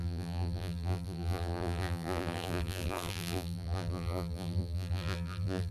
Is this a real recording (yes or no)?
no